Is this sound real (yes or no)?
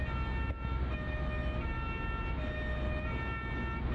yes